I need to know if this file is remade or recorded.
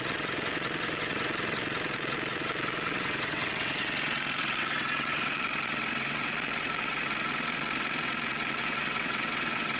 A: remade